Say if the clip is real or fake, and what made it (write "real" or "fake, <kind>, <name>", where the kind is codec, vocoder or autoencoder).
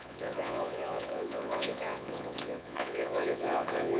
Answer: fake, vocoder, Vocos